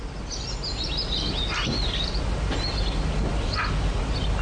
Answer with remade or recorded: recorded